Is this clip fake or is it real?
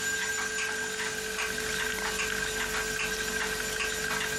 real